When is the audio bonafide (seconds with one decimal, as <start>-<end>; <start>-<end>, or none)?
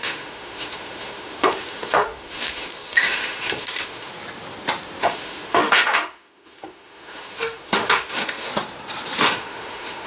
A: 4.1-5.0; 8.5-9.2